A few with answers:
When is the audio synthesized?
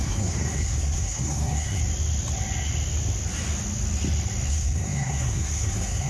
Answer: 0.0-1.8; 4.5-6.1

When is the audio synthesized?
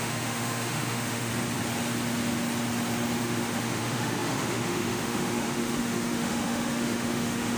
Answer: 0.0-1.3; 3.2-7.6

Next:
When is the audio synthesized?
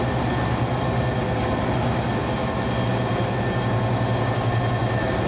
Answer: 4.8-5.3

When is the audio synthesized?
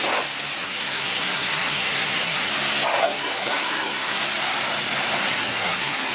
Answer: 0.6-2.5; 3.0-4.2; 5.2-6.1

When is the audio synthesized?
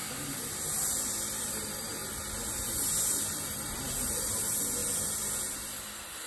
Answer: 0.0-0.5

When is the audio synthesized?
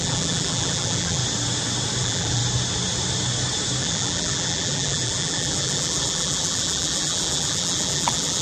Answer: 0.0-1.2; 2.0-2.4; 3.8-8.4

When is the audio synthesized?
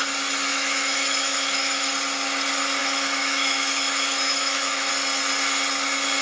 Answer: 0.5-1.9; 2.8-4.9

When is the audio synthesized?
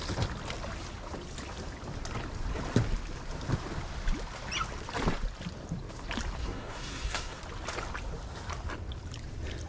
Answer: 6.4-7.4